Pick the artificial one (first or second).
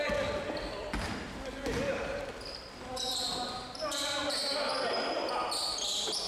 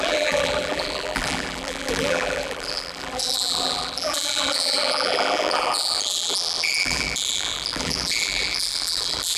second